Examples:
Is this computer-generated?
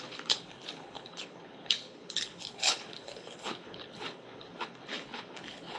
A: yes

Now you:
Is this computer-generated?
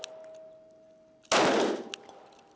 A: no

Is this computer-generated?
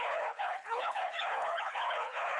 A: yes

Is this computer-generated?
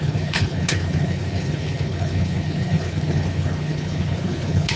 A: yes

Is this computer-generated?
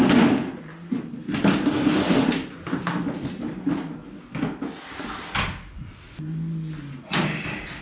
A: no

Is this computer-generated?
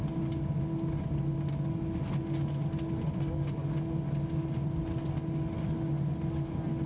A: no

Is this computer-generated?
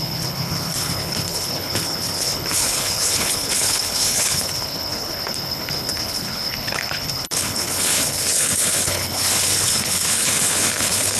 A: yes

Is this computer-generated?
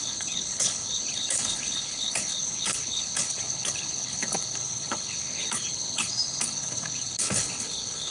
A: yes